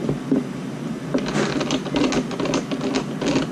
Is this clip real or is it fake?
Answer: real